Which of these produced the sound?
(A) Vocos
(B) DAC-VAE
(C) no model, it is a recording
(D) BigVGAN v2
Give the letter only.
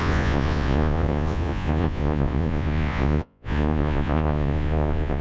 A